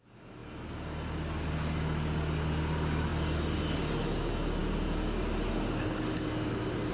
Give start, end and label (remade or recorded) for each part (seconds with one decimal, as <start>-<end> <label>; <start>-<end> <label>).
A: 0.0-6.9 recorded